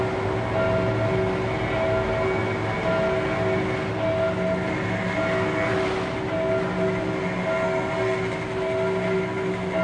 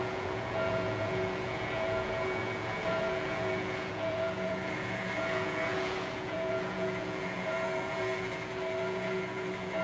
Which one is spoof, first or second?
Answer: second